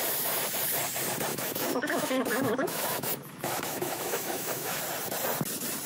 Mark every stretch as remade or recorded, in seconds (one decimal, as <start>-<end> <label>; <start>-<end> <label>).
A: 0.0-1.3 recorded; 1.3-4.8 remade; 4.8-5.9 recorded